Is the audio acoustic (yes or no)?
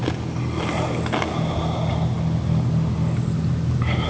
yes